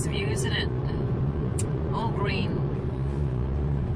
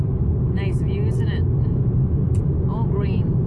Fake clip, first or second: first